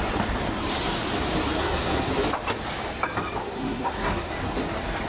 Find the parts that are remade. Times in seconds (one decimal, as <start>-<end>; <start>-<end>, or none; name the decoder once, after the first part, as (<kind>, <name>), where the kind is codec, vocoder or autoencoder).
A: 1.6-2.1 (codec, SNAC); 3.4-4.3

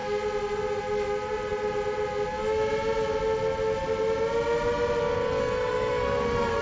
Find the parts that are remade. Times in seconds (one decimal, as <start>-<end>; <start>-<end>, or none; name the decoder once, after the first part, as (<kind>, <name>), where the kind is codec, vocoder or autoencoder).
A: 5.4-6.6 (codec, SNAC)

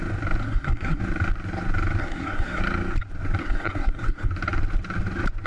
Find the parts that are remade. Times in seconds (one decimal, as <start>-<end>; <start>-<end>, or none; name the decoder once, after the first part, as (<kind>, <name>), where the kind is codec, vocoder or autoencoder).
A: 0.4-1.0 (codec, SNAC); 2.0-2.6; 3.4-4.3

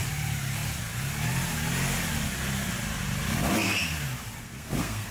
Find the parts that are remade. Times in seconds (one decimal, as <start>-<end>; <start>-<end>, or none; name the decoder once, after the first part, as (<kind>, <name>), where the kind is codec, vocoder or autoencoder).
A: 4.4-5.1 (codec, SNAC)

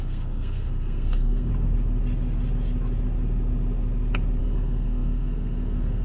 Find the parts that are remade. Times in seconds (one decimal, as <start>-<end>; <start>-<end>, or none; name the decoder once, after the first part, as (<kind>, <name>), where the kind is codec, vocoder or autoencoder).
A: 0.0-1.5 (codec, SNAC); 4.4-6.0